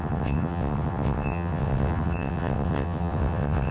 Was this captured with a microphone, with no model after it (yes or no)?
no